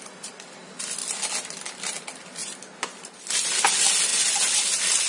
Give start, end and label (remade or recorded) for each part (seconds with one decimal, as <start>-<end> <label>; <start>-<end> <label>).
0.0-5.1 recorded